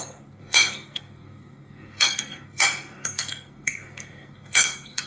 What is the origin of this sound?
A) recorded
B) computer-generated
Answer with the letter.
B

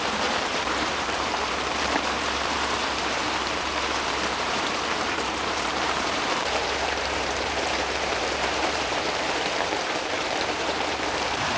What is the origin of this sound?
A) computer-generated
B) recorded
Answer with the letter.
A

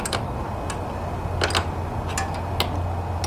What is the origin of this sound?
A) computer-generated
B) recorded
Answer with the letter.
B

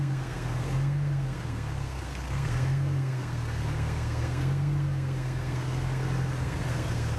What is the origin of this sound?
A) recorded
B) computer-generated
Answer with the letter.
B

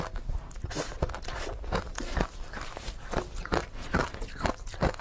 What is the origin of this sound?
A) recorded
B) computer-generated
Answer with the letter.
A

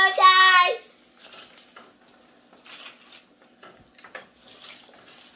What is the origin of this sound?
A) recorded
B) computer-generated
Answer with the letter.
A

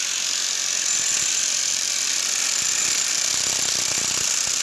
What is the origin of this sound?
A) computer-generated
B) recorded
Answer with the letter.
B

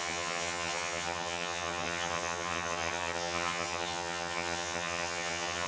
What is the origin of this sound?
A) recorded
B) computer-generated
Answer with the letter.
B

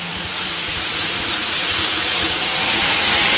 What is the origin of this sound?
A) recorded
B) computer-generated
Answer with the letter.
B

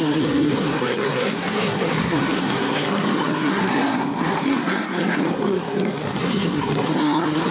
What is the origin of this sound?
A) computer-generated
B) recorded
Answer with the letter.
A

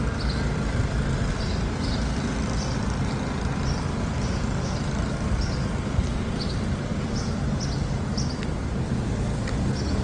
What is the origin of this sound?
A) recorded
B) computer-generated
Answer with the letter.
A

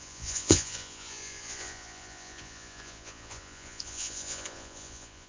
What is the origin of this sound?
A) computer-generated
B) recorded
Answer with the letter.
A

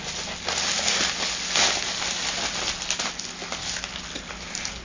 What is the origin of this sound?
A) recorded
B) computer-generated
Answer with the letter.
A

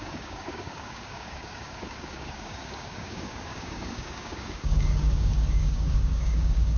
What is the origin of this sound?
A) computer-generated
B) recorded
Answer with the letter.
A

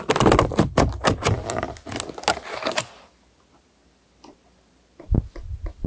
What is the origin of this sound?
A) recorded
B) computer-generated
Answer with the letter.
A